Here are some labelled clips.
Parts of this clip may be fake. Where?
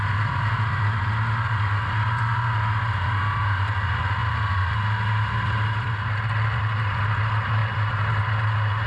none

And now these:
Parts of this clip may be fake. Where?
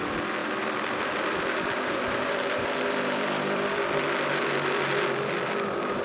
0.4-3.8